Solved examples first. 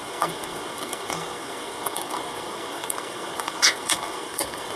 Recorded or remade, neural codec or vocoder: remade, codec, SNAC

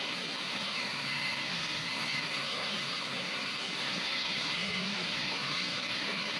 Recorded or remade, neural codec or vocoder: remade, codec, SNAC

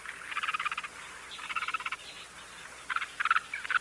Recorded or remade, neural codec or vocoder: recorded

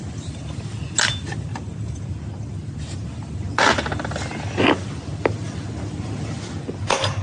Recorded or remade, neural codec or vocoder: recorded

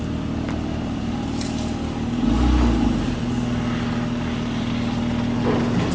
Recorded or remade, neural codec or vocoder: recorded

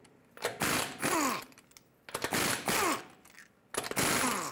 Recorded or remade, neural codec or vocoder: recorded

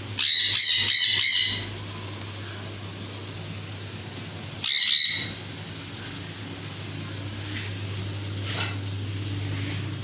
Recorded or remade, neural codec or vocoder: recorded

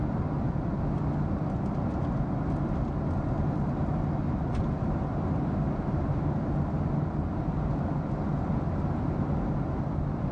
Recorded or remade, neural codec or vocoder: recorded